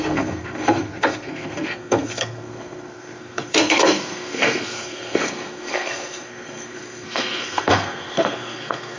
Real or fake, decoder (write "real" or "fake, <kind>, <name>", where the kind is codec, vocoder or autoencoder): fake, codec, SNAC